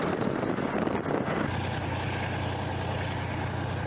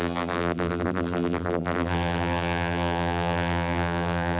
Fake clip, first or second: second